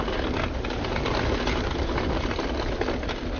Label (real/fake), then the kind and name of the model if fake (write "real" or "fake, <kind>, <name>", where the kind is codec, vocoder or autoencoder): real